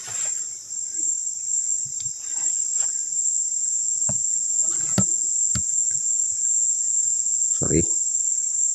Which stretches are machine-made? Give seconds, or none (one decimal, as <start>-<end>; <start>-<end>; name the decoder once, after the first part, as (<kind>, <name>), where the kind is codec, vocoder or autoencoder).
3.6-7.8 (vocoder, Vocos)